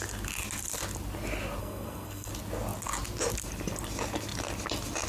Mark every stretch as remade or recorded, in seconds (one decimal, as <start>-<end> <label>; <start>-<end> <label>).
0.0-1.6 recorded; 1.6-2.3 remade; 2.3-5.1 recorded